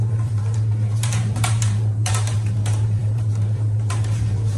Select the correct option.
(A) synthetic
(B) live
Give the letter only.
A